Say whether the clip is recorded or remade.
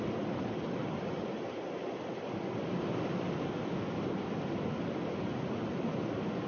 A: recorded